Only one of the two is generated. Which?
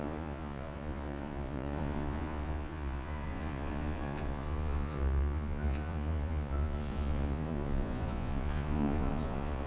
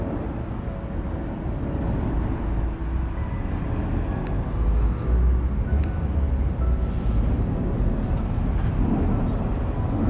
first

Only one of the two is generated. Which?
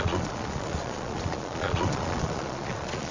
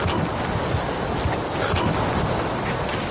first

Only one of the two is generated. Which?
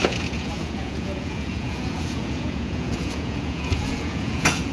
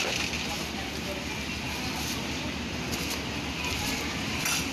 first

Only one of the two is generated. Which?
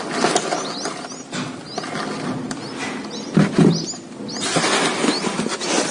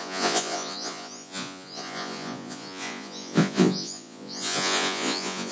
second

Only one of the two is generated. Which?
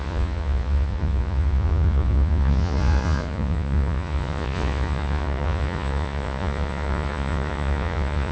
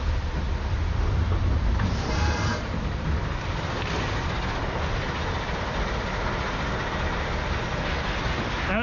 first